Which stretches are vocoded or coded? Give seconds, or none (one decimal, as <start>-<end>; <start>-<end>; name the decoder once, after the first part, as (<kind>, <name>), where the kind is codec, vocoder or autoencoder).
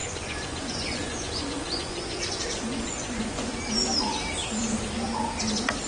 0.0-3.5 (vocoder, Vocos)